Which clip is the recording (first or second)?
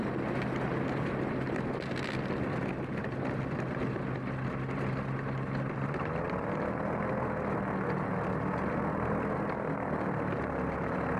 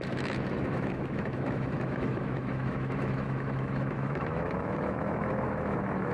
first